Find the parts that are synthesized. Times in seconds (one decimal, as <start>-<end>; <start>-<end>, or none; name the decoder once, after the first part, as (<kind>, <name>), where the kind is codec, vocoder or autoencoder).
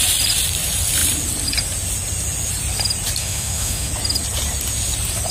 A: 3.2-3.9 (autoencoder, DAC-VAE)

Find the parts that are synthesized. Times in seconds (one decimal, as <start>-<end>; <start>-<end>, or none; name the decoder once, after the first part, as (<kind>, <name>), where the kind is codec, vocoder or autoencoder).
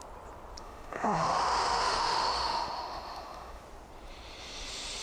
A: 0.6-3.6 (autoencoder, DAC-VAE)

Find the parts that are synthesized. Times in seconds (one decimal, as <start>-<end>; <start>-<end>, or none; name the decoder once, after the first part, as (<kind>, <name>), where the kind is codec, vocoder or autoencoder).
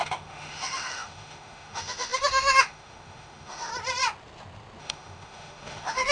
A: 0.0-3.7 (autoencoder, DAC-VAE); 4.8-6.1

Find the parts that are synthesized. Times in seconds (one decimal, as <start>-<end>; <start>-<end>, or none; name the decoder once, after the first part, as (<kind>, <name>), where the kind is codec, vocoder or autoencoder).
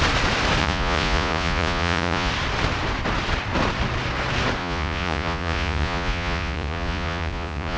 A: 0.6-2.3 (vocoder, Vocos); 4.6-7.8